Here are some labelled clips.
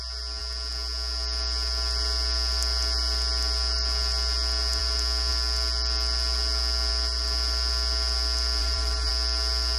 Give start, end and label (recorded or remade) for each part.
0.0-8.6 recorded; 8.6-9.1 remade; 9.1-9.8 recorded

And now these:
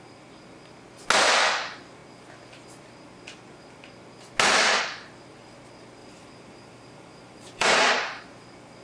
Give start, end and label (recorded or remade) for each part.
0.0-6.0 recorded; 6.0-7.9 remade; 7.9-8.8 recorded

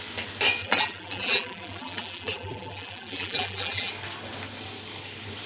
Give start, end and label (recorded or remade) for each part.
0.0-0.6 recorded; 0.6-3.9 remade; 3.9-5.5 recorded

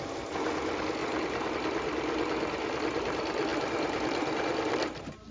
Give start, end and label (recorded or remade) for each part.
0.0-1.0 recorded; 1.0-1.5 remade; 1.5-3.5 recorded; 3.5-5.3 remade

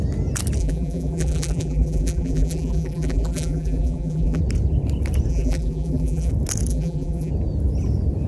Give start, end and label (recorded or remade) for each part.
0.0-0.6 recorded; 0.6-4.4 remade; 4.4-5.3 recorded; 5.3-6.3 remade; 6.3-6.7 recorded; 6.7-7.3 remade; 7.3-8.3 recorded

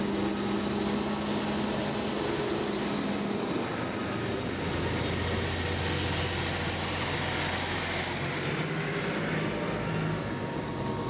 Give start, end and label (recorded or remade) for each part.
0.0-11.1 recorded